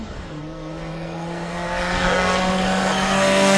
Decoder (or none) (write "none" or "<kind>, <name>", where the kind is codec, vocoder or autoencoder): codec, SNAC